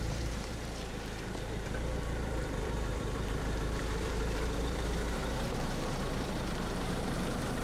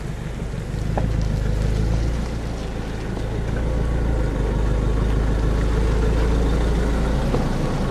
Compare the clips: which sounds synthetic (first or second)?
first